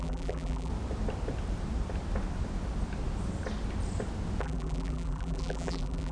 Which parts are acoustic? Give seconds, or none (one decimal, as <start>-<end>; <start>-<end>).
0.7-4.4